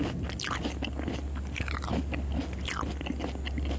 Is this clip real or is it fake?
real